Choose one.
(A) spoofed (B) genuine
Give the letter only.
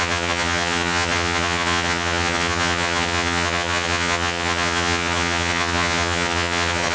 A